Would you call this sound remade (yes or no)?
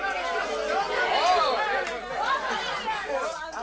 no